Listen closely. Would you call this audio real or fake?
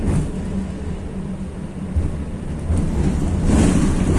real